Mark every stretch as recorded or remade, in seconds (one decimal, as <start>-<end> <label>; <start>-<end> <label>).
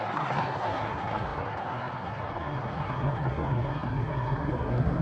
0.0-5.0 remade